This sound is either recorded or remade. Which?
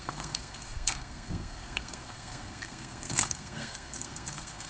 remade